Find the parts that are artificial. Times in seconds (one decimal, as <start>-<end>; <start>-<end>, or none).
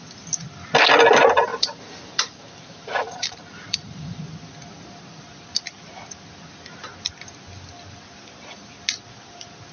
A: 1.5-4.2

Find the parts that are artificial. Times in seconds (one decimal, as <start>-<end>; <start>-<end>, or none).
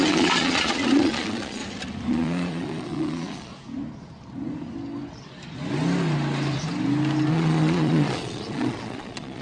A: 0.0-1.6; 2.1-3.5; 7.3-9.4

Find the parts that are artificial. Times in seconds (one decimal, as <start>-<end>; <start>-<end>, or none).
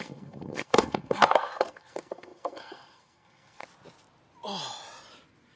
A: 0.0-3.6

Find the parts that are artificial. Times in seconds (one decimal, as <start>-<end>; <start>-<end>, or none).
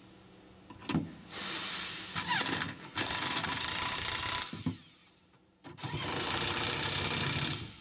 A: 5.0-7.2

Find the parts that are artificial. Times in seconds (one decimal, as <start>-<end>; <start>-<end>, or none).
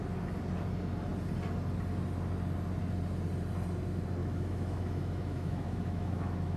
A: 4.2-6.6